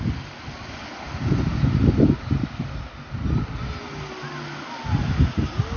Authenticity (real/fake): real